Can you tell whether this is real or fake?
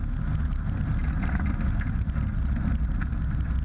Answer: real